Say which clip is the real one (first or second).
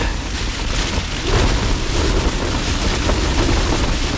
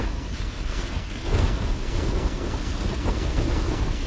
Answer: first